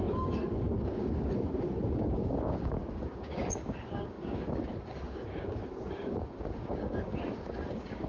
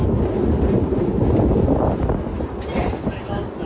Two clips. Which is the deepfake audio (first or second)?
first